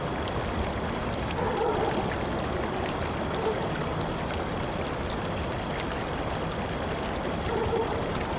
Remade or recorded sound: recorded